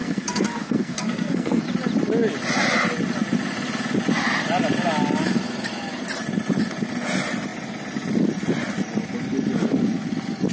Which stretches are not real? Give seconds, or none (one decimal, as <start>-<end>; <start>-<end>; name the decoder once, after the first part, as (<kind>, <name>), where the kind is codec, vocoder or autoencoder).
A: 0.0-1.6 (codec, SNAC)